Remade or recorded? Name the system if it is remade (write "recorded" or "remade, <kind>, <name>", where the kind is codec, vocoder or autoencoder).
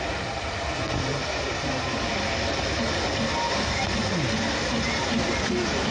recorded